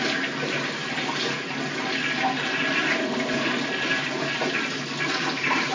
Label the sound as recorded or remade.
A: recorded